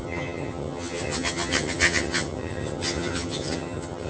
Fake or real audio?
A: fake